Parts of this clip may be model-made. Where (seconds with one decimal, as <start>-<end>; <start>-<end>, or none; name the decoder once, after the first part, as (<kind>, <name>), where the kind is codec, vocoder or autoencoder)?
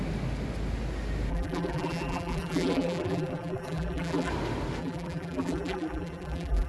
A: 1.3-4.3 (vocoder, BigVGAN v2); 4.8-6.7